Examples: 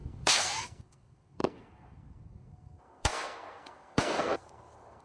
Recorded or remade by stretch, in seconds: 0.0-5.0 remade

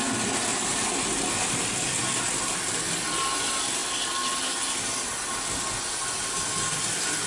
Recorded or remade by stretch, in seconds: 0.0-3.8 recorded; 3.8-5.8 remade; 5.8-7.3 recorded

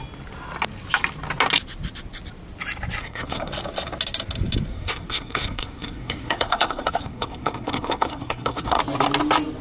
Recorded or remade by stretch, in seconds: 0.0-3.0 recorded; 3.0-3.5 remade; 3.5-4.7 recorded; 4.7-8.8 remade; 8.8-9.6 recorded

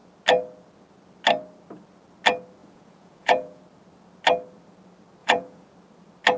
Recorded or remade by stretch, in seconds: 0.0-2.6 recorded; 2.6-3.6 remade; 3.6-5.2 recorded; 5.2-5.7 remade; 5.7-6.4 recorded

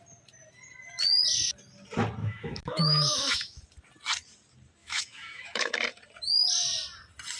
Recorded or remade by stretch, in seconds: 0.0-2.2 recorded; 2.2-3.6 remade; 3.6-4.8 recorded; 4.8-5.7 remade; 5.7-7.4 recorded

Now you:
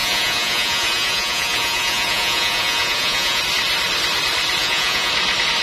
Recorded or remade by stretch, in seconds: 0.0-3.4 remade; 3.4-4.6 recorded; 4.6-5.1 remade; 5.1-5.6 recorded